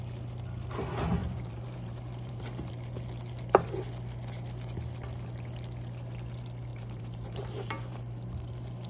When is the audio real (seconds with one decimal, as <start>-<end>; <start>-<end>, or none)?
0.0-1.2; 2.7-6.7; 8.5-8.9